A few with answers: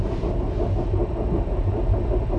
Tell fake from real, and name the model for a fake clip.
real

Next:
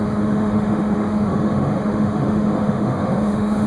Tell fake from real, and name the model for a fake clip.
fake, autoencoder, DAC-VAE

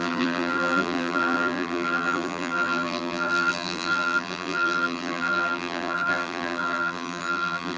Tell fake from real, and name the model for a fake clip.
fake, vocoder, BigVGAN v2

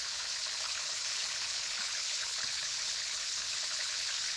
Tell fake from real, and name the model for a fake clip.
fake, codec, HILCodec